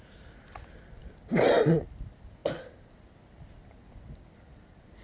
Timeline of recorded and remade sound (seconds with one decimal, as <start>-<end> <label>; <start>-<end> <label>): 0.0-5.0 recorded